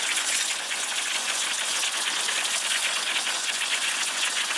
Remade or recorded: remade